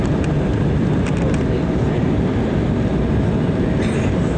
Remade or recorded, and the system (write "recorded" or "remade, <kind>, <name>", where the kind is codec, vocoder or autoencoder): recorded